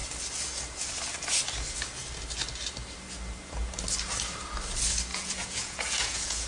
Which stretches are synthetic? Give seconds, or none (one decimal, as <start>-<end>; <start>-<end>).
5.1-6.5